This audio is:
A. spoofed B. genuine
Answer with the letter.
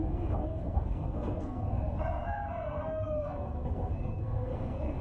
A